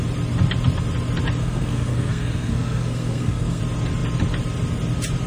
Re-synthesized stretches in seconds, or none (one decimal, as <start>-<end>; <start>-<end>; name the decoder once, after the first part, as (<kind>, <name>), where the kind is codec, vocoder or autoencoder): 1.4-3.6 (codec, SNAC)